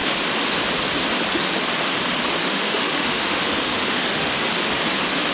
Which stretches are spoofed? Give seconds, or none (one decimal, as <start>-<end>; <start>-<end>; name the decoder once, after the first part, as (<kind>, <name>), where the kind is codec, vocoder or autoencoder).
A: 2.4-4.3 (autoencoder, DAC-VAE)